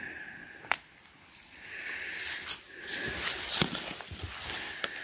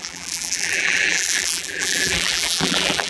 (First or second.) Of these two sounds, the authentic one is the first